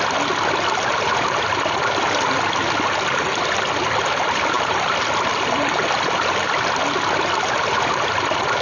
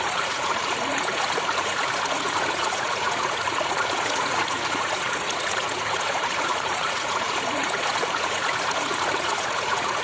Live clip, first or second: first